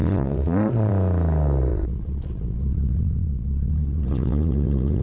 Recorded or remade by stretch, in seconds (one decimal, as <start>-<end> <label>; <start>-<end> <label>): 0.0-0.9 remade; 0.9-1.7 recorded; 1.7-5.0 remade